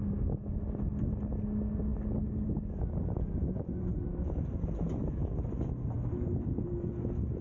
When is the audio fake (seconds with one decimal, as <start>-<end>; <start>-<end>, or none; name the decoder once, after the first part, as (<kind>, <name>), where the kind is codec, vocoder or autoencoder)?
none